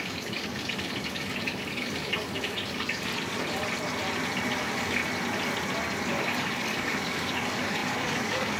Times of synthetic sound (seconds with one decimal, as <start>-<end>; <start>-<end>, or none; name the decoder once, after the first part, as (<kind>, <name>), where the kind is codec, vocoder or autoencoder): 0.0-3.1 (codec, DAC); 4.6-5.0; 6.1-8.6